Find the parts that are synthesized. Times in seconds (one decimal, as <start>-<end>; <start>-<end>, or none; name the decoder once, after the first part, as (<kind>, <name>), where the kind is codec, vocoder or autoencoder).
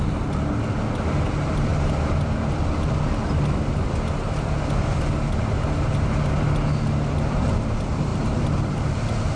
none